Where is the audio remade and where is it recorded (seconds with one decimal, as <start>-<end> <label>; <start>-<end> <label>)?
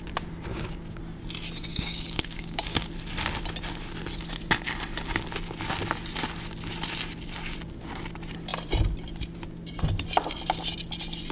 0.0-0.5 recorded; 0.5-1.0 remade; 1.0-1.7 recorded; 1.7-2.9 remade; 2.9-11.3 recorded